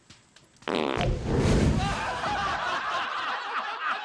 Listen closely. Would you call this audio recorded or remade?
recorded